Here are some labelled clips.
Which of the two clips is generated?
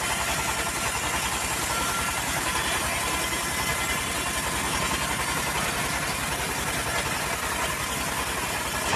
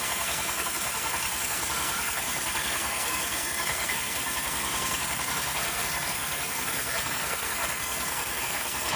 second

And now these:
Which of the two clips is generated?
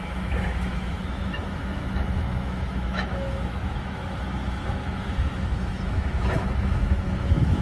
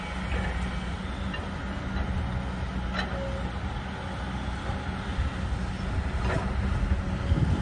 first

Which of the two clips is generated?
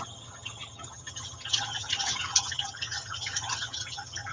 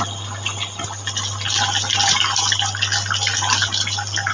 first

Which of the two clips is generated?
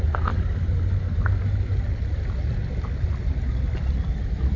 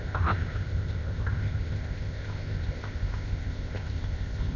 second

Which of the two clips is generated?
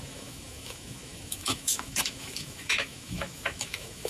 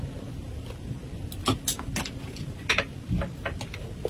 first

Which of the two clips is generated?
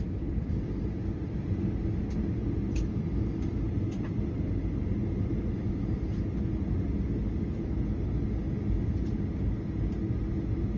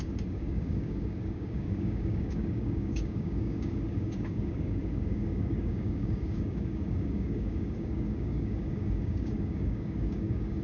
second